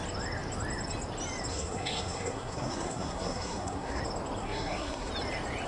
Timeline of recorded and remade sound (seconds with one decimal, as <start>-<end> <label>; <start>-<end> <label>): 0.0-1.5 recorded; 1.5-4.0 remade; 4.0-4.4 recorded; 4.4-5.1 remade; 5.1-5.7 recorded